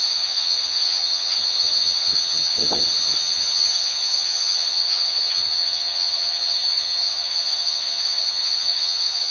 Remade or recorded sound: remade